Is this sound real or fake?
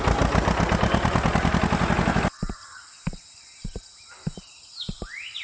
real